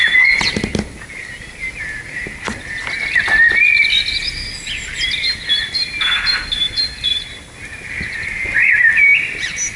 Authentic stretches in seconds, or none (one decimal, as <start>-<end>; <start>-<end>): 0.0-9.8